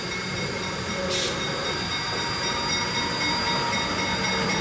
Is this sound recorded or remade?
recorded